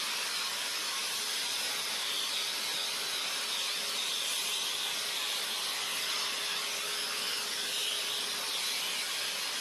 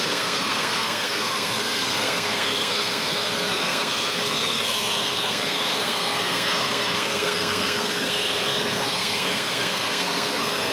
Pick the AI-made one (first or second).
second